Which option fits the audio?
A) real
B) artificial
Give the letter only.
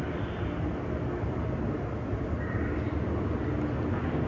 A